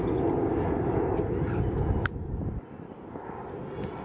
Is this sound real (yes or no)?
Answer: yes